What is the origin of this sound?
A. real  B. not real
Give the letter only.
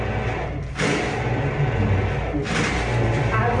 A